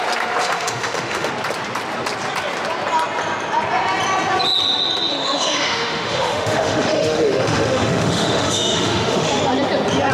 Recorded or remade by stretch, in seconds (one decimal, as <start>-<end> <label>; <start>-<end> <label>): 0.0-0.4 recorded; 0.4-1.3 remade; 1.3-5.1 recorded; 5.1-9.4 remade; 9.4-10.1 recorded